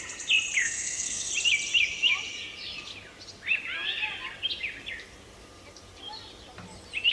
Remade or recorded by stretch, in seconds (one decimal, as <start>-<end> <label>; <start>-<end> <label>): 0.0-0.6 recorded; 0.6-1.3 remade; 1.3-7.1 recorded